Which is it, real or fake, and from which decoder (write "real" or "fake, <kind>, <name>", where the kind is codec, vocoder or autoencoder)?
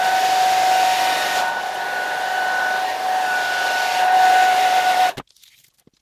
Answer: real